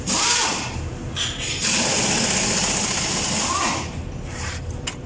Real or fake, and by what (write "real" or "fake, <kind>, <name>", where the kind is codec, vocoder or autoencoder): real